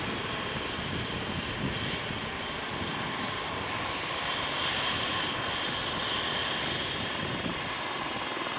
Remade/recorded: recorded